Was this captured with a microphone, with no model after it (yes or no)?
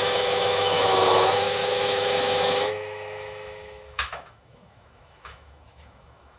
no